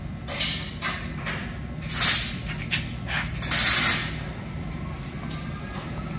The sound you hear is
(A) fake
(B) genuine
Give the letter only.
B